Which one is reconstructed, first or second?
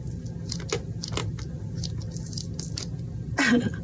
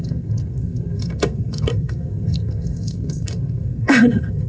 second